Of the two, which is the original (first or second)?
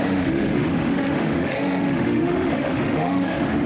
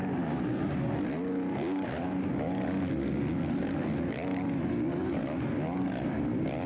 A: second